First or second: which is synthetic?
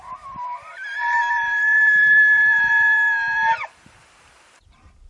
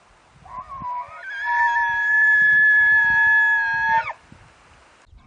first